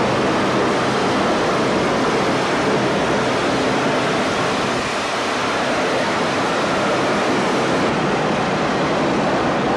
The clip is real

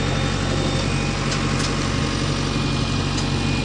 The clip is real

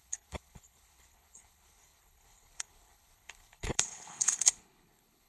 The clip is fake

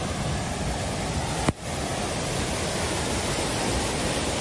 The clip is real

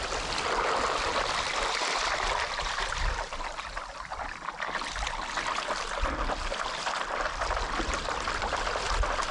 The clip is real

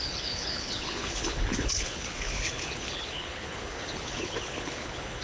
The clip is fake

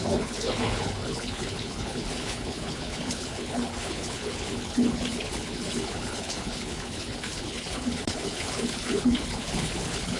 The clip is fake